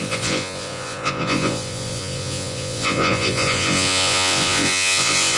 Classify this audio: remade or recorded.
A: remade